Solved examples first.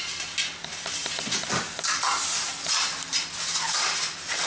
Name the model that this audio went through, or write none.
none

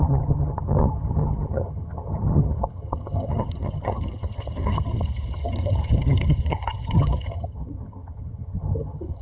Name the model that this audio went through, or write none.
vocoder, HiFi-GAN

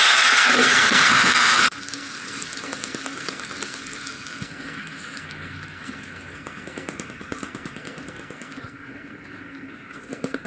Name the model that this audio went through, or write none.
codec, SNAC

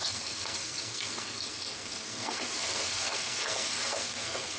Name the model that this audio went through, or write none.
codec, SNAC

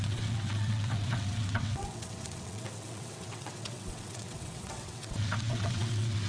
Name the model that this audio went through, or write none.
vocoder, WaveNeXt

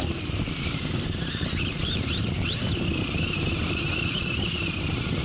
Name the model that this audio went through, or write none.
vocoder, BigVGAN v2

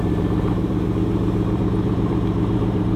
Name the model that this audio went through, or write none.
vocoder, BigVGAN v2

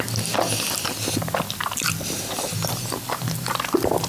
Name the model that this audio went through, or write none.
none